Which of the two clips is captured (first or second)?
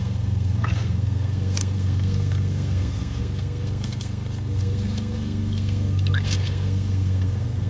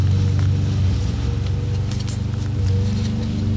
second